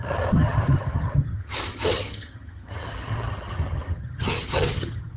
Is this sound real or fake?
fake